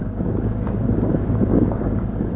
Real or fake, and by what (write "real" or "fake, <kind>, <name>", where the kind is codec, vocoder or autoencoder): fake, codec, DAC